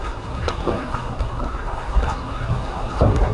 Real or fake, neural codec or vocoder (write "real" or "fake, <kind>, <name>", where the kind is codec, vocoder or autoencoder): fake, codec, SNAC